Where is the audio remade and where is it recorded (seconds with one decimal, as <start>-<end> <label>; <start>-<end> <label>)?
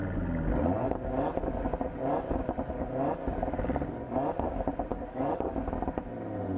0.0-4.9 recorded; 4.9-5.5 remade; 5.5-6.6 recorded